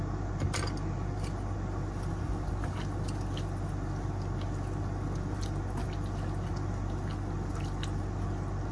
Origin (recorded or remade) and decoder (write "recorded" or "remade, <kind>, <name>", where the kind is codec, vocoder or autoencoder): recorded